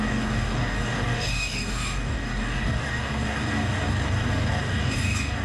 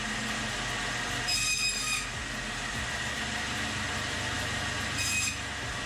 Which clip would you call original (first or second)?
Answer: second